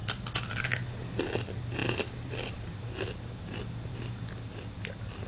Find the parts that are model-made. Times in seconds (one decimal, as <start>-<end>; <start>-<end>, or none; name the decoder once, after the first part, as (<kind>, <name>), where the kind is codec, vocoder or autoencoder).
none